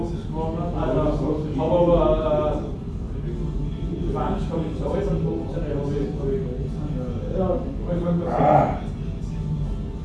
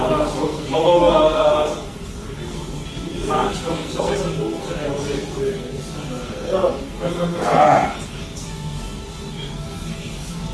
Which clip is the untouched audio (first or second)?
first